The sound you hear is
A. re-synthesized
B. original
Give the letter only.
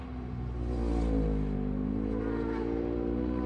B